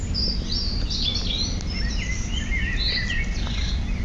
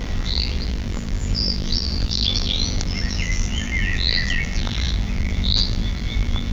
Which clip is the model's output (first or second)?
second